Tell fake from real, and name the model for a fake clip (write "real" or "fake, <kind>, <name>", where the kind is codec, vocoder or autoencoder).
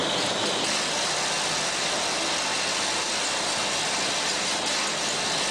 real